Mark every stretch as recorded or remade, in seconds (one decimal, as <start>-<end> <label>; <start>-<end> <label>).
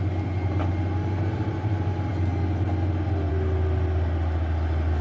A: 0.0-5.0 recorded